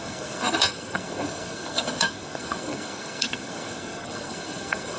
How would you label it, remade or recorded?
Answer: remade